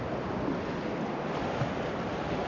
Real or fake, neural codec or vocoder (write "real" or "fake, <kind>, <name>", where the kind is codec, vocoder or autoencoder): real